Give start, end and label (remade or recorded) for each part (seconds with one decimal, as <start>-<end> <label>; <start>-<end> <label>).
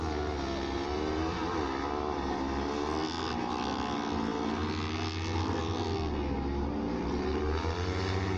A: 0.0-8.4 recorded